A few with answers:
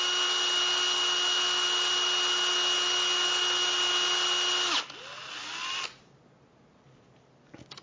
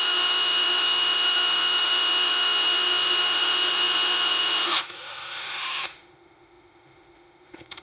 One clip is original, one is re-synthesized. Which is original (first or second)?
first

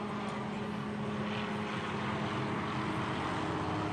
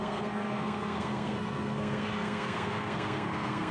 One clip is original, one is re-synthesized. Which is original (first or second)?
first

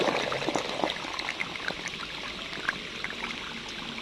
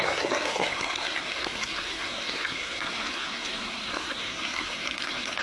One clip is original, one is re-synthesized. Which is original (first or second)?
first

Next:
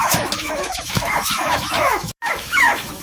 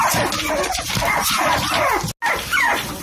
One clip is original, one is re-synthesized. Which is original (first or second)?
second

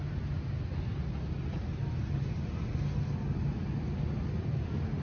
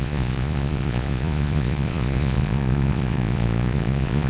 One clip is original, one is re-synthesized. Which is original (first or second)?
first